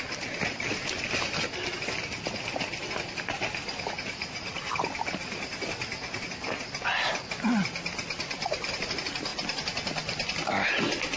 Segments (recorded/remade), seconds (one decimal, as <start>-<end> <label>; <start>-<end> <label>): 0.0-11.2 recorded